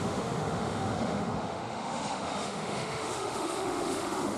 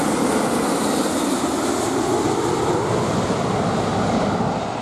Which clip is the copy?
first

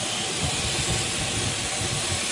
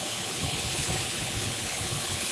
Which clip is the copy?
second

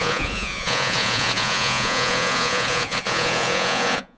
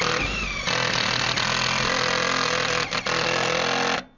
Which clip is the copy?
first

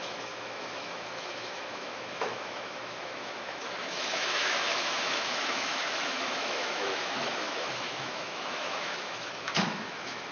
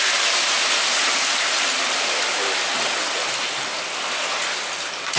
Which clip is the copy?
first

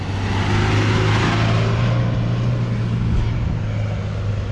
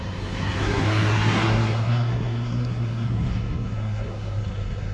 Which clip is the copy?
second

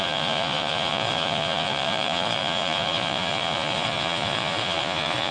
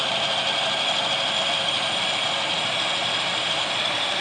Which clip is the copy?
first